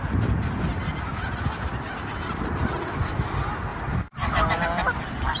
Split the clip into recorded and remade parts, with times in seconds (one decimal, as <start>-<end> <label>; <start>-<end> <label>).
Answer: 0.0-1.1 recorded; 1.1-3.1 remade; 3.1-3.7 recorded; 3.7-4.6 remade; 4.6-5.4 recorded

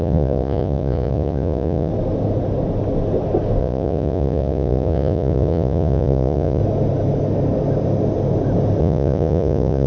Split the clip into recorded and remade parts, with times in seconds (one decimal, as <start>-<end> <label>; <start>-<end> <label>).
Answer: 0.0-1.9 remade; 1.9-3.6 recorded; 3.6-6.6 remade; 6.6-8.8 recorded; 8.8-9.9 remade

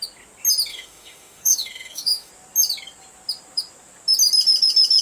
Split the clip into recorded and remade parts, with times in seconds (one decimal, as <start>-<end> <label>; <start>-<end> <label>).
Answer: 0.0-0.7 recorded; 0.7-2.3 remade; 2.3-5.0 recorded

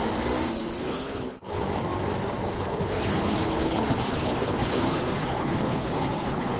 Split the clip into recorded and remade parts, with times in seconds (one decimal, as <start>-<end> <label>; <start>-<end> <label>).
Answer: 0.0-0.6 recorded; 0.6-1.6 remade; 1.6-2.5 recorded; 2.5-6.6 remade

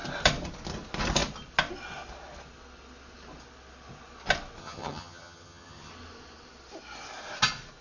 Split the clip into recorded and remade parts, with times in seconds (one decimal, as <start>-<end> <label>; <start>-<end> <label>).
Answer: 0.0-4.6 recorded; 4.6-5.9 remade; 5.9-7.8 recorded

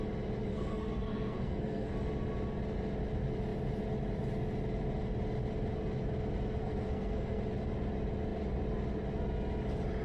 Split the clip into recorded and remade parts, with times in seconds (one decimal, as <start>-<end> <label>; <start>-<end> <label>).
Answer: 0.0-0.5 recorded; 0.5-1.9 remade; 1.9-6.6 recorded; 6.6-7.4 remade; 7.4-10.0 recorded

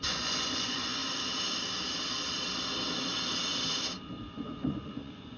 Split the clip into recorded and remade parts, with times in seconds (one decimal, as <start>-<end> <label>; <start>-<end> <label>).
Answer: 0.0-1.0 remade; 1.0-4.2 recorded; 4.2-5.4 remade

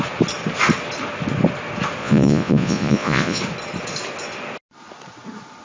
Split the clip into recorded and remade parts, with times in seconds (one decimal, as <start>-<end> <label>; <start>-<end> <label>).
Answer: 0.0-2.0 recorded; 2.0-3.4 remade; 3.4-5.6 recorded